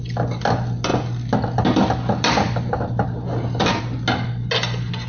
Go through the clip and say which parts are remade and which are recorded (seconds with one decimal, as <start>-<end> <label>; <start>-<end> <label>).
0.0-5.1 recorded